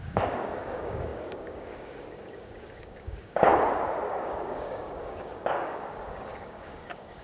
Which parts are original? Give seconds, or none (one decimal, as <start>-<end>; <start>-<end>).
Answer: 3.5-4.1